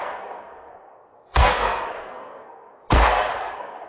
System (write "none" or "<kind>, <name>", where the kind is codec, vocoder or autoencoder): codec, SNAC